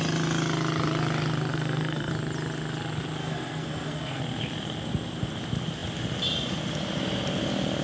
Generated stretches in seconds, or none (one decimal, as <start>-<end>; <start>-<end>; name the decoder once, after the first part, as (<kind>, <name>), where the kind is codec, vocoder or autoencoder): 1.5-2.1 (codec, SNAC); 3.2-4.2